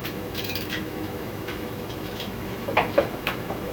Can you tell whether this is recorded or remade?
remade